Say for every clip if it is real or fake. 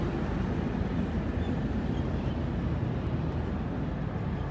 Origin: real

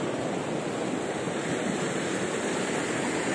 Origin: real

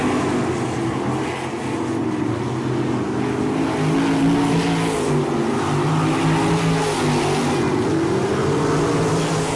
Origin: real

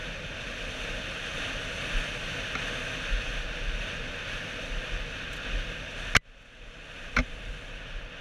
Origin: real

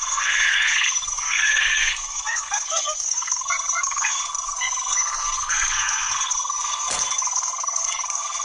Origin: fake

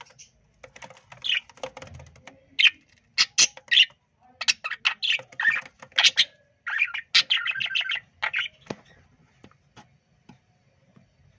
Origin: real